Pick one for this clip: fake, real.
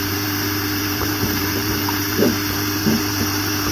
fake